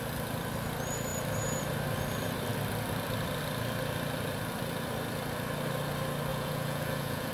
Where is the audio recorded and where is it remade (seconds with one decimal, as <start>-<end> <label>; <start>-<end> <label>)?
0.0-6.3 recorded; 6.3-7.3 remade

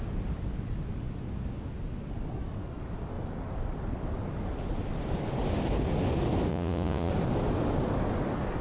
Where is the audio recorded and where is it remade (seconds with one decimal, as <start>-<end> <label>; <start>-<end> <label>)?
0.0-6.5 recorded; 6.5-7.1 remade; 7.1-8.6 recorded

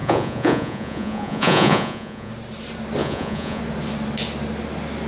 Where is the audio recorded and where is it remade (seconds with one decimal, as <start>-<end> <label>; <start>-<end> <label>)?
0.0-2.3 remade; 2.3-3.0 recorded; 3.0-3.6 remade; 3.6-5.1 recorded

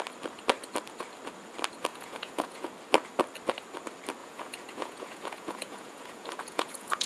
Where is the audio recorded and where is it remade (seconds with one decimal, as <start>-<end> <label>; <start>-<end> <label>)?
0.0-1.9 recorded; 1.9-2.7 remade; 2.7-4.2 recorded; 4.2-7.1 remade

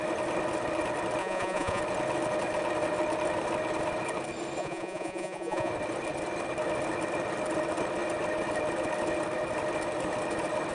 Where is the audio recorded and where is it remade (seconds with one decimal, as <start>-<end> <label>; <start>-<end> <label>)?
0.0-1.2 recorded; 1.2-1.8 remade; 1.8-4.6 recorded; 4.6-5.7 remade; 5.7-10.7 recorded

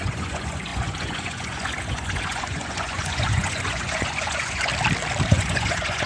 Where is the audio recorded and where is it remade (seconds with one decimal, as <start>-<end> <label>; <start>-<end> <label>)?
0.0-4.7 remade; 4.7-5.3 recorded; 5.3-6.1 remade

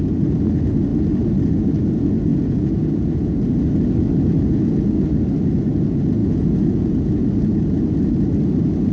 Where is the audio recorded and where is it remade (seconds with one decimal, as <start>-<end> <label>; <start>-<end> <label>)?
0.0-2.3 recorded; 2.3-3.4 remade; 3.4-6.2 recorded; 6.2-7.3 remade; 7.3-8.9 recorded

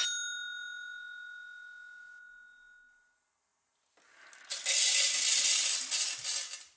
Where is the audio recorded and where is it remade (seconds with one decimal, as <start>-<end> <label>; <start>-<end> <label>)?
0.0-6.8 recorded